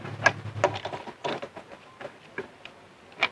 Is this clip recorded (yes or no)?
yes